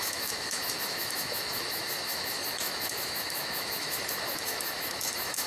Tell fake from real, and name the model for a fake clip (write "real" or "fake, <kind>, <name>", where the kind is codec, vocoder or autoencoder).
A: fake, autoencoder, DAC-VAE